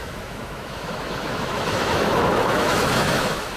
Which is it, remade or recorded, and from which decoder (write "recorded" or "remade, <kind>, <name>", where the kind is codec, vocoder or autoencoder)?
remade, autoencoder, DAC-VAE